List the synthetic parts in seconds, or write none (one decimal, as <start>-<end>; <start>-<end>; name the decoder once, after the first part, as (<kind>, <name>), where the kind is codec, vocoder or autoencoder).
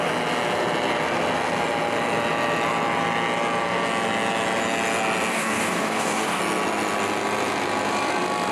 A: 5.3-6.4 (codec, DAC)